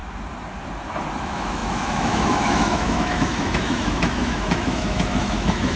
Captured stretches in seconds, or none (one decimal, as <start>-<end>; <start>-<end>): 0.0-1.2

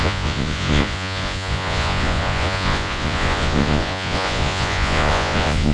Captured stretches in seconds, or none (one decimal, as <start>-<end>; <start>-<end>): none